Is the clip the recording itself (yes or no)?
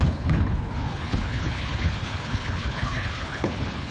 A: no